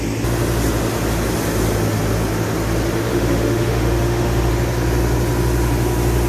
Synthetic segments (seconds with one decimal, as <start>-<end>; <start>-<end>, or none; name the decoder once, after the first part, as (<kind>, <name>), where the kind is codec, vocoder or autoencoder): 3.1-4.5 (autoencoder, DAC-VAE)